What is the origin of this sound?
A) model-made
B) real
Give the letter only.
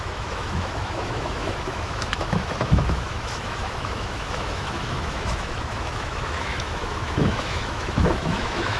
A